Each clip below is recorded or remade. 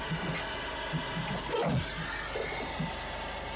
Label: recorded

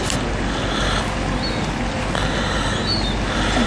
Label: recorded